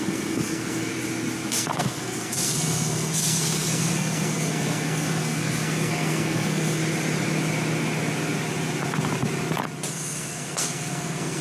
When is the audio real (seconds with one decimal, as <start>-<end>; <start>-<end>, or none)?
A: 0.9-1.5; 6.8-9.9